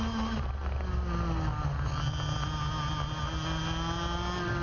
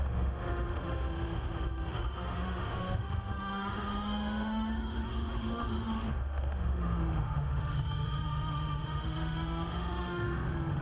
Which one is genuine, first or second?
first